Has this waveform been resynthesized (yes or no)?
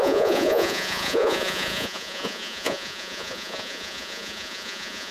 yes